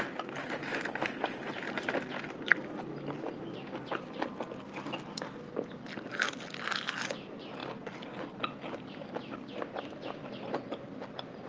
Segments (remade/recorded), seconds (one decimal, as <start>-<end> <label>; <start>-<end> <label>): 0.0-11.5 recorded